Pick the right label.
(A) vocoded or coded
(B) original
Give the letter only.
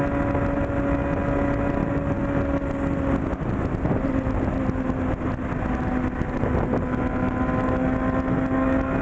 B